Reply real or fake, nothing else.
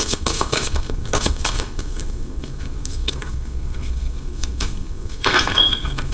fake